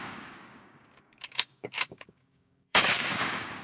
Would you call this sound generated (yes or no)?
yes